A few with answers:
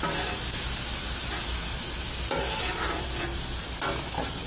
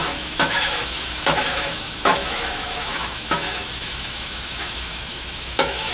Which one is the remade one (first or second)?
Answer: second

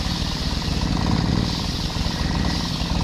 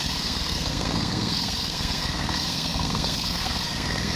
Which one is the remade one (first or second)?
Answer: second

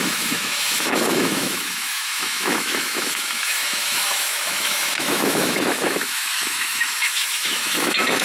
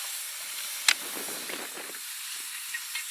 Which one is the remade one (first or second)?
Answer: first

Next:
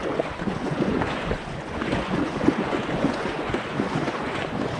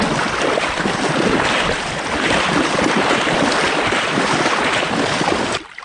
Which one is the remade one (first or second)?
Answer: first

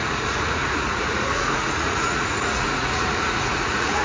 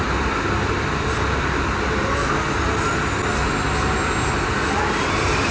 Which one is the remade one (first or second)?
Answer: first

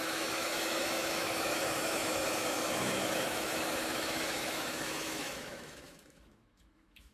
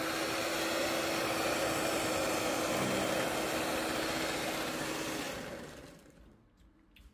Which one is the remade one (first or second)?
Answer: first